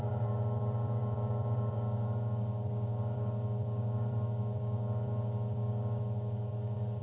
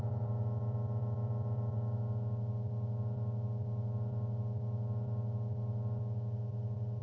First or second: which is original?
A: second